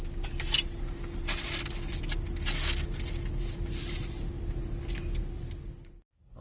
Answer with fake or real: real